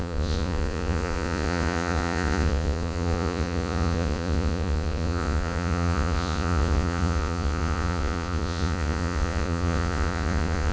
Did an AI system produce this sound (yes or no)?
yes